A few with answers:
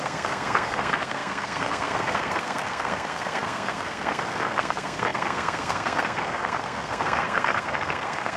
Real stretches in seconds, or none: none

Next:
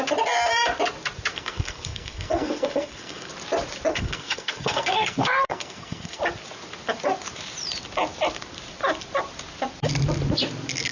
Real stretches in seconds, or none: 0.0-1.3; 3.3-3.9; 6.2-10.9

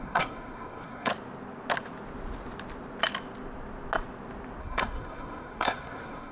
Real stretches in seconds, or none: 1.1-4.6

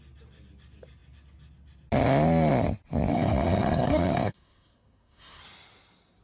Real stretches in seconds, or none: 0.0-3.1; 5.4-6.2